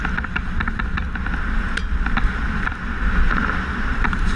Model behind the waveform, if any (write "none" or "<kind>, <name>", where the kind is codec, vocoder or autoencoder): vocoder, BigVGAN v2